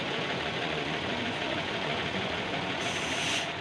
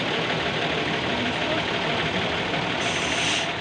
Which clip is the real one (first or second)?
second